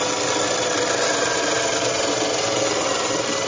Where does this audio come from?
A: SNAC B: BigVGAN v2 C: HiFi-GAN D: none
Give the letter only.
D